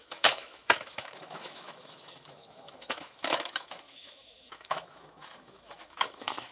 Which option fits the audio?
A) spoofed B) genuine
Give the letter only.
A